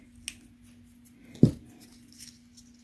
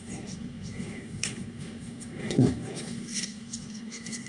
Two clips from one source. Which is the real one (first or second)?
first